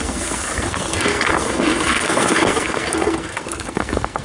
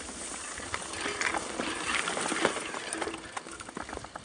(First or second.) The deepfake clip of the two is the first